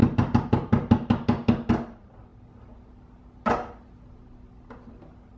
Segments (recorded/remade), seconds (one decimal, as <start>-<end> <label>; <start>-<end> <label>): 0.0-5.4 recorded